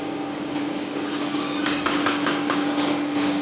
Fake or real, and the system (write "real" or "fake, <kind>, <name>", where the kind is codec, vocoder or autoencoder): fake, codec, DAC